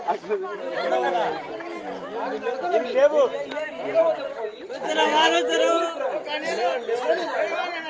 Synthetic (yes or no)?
no